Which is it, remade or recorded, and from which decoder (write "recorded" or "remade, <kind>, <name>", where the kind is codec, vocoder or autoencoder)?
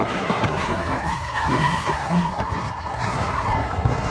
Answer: remade, codec, SNAC